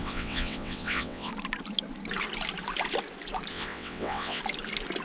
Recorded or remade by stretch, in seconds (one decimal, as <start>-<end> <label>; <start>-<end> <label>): 0.0-1.3 remade; 1.3-3.5 recorded; 3.5-4.4 remade; 4.4-5.0 recorded